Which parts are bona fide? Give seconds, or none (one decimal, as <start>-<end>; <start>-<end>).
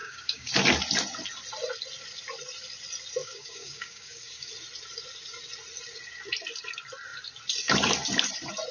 0.5-3.2; 4.5-8.7